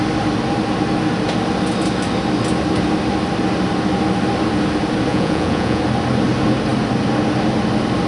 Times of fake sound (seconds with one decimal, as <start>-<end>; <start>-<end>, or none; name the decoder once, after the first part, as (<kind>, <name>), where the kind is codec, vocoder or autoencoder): 5.1-5.8 (vocoder, Vocos)